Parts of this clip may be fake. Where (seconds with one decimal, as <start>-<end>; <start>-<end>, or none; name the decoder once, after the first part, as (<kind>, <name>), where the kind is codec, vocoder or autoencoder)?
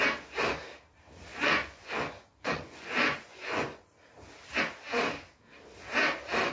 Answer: 1.3-1.9 (vocoder, Vocos); 2.3-3.9